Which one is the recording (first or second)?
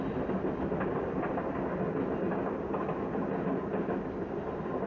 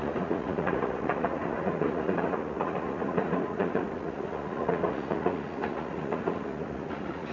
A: first